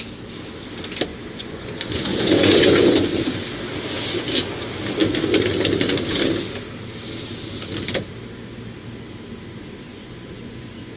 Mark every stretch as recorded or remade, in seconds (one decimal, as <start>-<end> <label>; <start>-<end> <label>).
0.0-1.1 recorded; 1.1-3.0 remade; 3.0-9.9 recorded; 9.9-11.0 remade